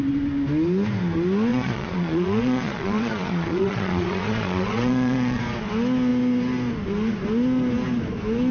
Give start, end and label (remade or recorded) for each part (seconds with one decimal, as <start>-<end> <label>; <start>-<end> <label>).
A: 0.0-1.5 recorded; 1.5-5.4 remade; 5.4-8.5 recorded